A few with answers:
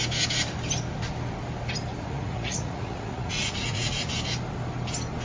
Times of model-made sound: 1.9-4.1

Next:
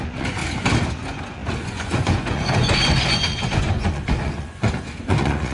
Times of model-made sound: 0.0-0.4; 0.9-5.5

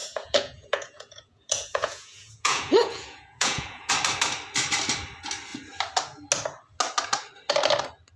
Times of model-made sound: 0.0-3.9